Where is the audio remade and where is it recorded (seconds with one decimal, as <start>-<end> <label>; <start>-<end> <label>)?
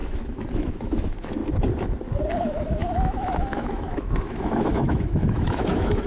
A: 0.0-1.4 remade; 1.4-2.4 recorded; 2.4-6.1 remade